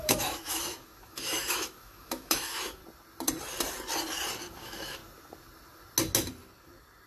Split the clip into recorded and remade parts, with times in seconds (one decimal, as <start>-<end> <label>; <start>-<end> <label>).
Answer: 0.0-2.8 remade; 2.8-4.5 recorded; 4.5-5.0 remade; 5.0-7.1 recorded